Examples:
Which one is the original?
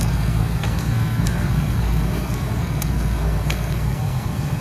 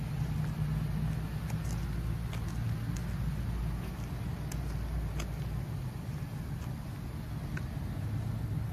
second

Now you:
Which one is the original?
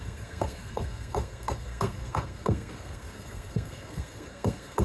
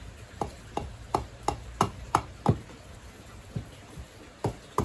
second